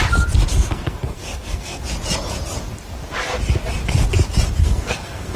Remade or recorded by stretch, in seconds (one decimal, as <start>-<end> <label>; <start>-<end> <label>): 0.0-0.5 recorded; 0.5-1.8 remade; 1.8-4.6 recorded; 4.6-5.4 remade